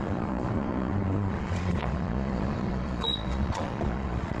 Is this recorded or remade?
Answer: remade